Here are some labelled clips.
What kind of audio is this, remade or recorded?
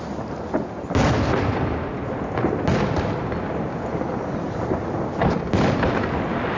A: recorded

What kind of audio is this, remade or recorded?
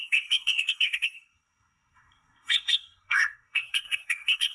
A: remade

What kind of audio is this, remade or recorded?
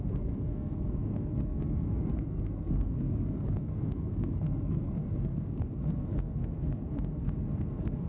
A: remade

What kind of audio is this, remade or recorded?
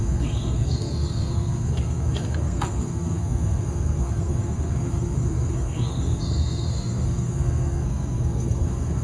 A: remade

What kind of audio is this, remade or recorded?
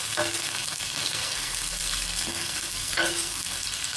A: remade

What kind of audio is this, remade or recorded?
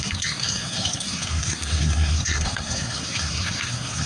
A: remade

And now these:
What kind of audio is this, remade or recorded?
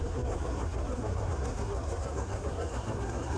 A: remade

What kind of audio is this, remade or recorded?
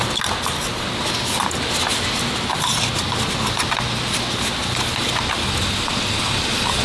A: recorded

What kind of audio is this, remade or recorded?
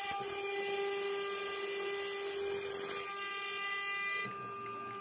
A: recorded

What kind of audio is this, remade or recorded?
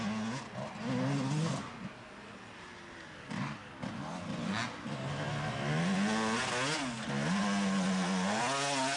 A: recorded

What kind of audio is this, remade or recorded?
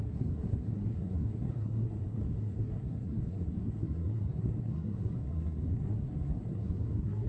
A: remade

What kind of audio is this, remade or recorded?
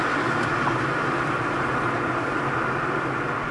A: recorded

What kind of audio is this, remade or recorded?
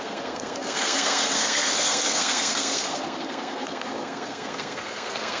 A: remade